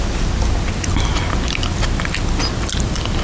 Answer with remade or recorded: recorded